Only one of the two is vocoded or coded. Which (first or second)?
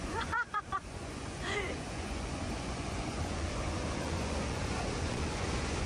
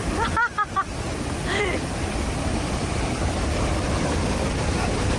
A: first